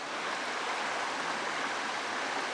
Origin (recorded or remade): recorded